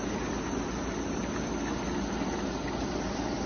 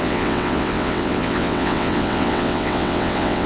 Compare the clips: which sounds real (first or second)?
first